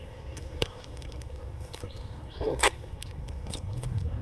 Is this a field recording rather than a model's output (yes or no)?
no